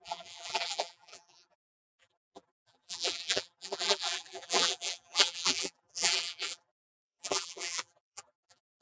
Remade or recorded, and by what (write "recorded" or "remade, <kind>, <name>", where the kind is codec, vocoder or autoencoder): remade, vocoder, BigVGAN v2